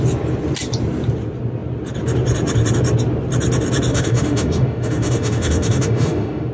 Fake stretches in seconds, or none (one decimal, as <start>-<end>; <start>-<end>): 3.9-6.5